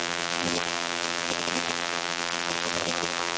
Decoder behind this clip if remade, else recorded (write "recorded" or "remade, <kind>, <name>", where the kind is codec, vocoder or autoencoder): remade, vocoder, BigVGAN v2